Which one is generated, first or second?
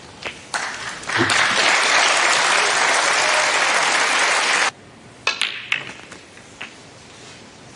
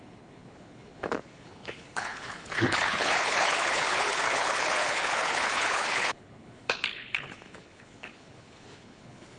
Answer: second